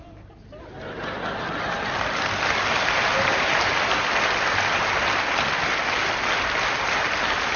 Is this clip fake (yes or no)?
no